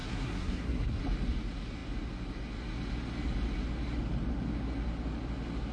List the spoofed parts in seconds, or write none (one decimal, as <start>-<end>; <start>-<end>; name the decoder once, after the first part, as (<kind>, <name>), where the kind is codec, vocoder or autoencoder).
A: 0.0-1.0 (codec, SNAC)